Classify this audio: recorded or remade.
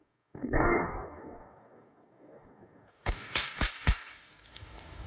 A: remade